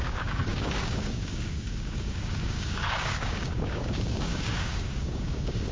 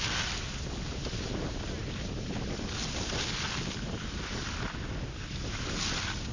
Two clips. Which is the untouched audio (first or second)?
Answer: second